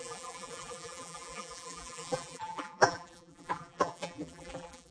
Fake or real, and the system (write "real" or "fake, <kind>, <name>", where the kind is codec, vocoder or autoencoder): fake, vocoder, BigVGAN v2